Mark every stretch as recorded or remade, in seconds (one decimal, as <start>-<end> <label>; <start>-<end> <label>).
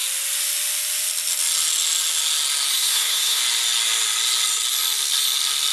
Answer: 0.0-2.8 recorded; 2.8-3.4 remade; 3.4-5.7 recorded